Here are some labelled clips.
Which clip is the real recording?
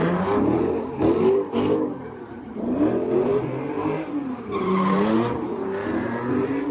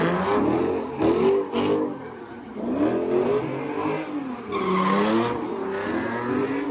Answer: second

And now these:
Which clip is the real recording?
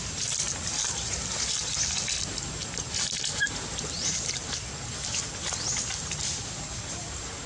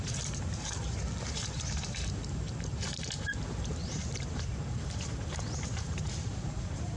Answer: first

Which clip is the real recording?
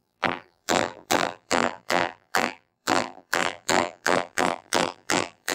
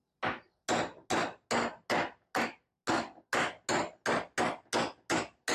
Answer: second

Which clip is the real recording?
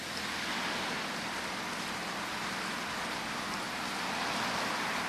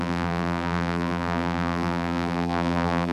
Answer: first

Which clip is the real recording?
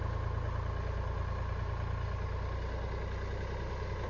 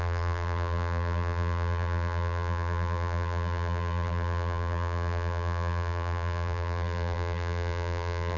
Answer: first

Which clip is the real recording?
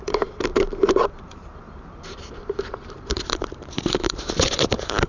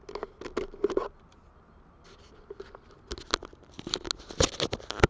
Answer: second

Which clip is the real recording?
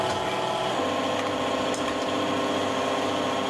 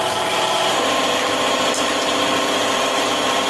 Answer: first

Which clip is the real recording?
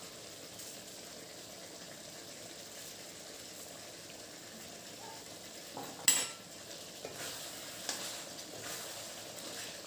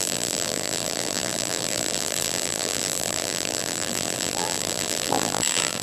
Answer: first